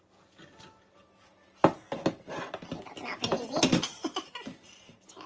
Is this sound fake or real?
real